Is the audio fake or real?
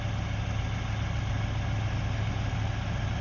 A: real